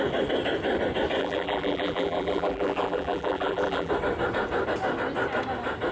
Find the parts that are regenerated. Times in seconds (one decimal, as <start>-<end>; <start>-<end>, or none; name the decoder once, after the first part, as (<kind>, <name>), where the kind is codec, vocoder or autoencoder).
1.2-3.9 (vocoder, BigVGAN v2)